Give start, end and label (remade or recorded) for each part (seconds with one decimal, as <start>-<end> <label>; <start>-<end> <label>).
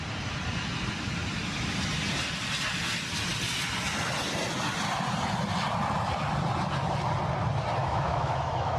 0.0-7.8 recorded; 7.8-8.8 remade